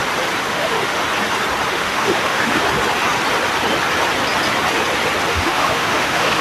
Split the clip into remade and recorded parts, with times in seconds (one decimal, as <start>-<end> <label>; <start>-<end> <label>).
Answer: 0.0-0.5 recorded; 0.5-1.0 remade; 1.0-1.7 recorded; 1.7-2.6 remade; 2.6-5.3 recorded; 5.3-6.4 remade